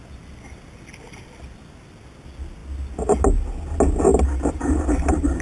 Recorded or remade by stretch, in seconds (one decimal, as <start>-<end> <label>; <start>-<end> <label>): 0.0-5.4 recorded